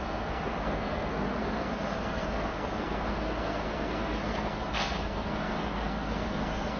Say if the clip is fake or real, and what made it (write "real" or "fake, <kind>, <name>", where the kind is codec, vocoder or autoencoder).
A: fake, codec, SNAC